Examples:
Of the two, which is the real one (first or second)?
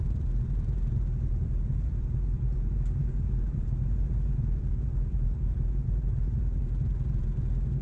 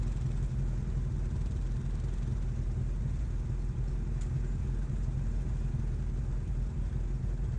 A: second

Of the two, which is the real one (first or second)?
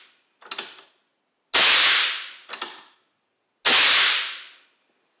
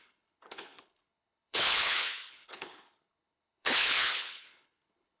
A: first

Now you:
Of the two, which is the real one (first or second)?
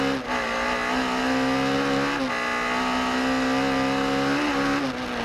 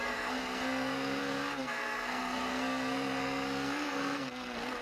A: first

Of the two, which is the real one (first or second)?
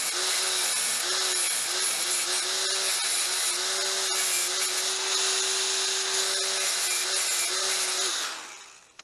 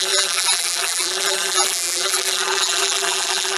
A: first